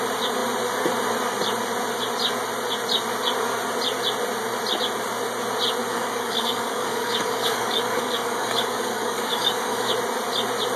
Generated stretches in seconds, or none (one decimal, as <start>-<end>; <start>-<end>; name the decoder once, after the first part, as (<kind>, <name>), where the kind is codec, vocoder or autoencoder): 5.9-9.9 (codec, DAC)